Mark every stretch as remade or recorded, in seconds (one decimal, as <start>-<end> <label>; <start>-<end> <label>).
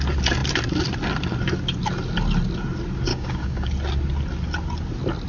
0.0-3.1 recorded; 3.1-3.7 remade; 3.7-5.3 recorded